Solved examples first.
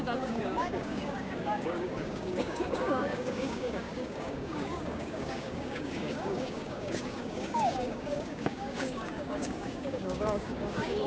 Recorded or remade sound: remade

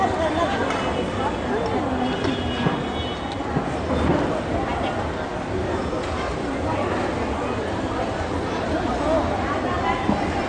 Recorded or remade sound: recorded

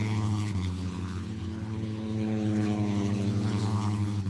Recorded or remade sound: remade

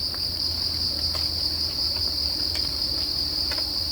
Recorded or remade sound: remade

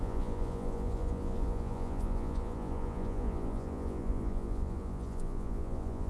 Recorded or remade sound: remade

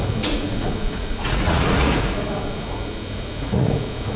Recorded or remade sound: remade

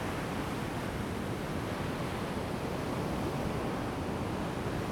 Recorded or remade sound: recorded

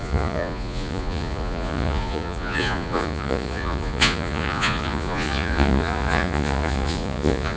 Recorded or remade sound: remade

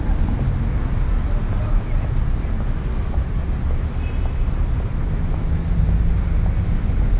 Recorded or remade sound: recorded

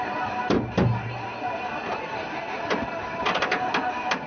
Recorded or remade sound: remade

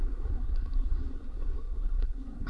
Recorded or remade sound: remade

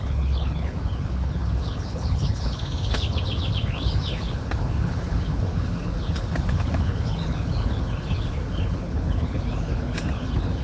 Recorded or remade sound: remade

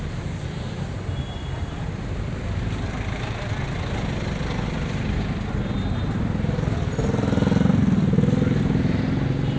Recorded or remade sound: recorded